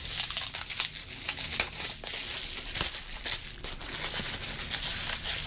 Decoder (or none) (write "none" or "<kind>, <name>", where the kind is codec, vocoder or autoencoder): none